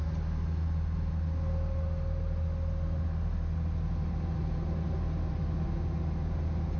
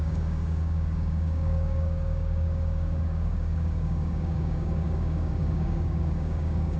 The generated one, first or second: second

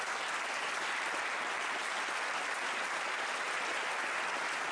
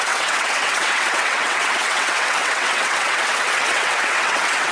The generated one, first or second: second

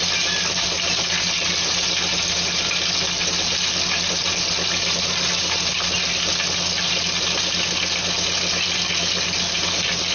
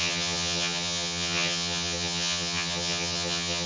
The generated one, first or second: second